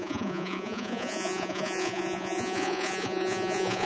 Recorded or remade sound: remade